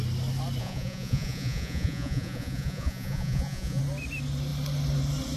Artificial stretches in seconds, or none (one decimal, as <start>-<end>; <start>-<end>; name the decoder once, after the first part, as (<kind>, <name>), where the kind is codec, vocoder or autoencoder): 0.6-3.8 (vocoder, Vocos)